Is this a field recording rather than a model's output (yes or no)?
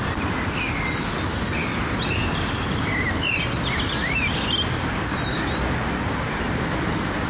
yes